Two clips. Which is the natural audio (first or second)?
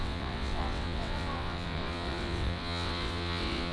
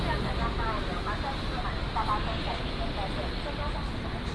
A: second